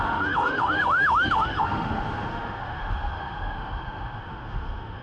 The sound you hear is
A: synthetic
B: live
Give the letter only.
A